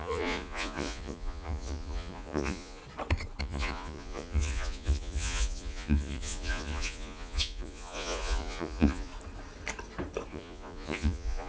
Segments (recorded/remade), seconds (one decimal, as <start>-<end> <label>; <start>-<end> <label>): 0.0-2.8 remade; 2.8-3.4 recorded; 3.4-9.1 remade; 9.1-10.3 recorded; 10.3-11.5 remade